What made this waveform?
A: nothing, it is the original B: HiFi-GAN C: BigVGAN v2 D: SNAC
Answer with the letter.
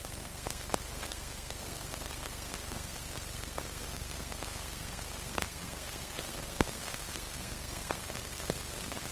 D